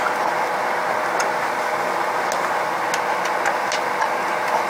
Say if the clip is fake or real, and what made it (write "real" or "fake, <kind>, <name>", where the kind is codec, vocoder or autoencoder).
real